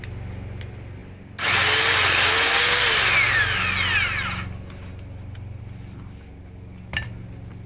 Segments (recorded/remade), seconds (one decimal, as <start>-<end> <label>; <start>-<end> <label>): 0.0-7.7 recorded